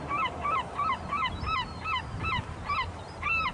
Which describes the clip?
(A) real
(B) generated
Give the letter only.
B